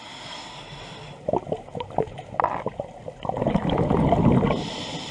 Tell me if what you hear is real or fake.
real